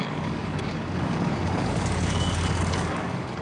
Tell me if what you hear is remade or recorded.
remade